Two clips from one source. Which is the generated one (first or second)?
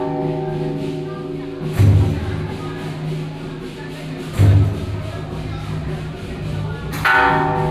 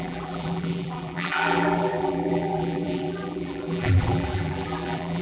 second